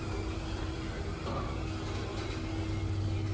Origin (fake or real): real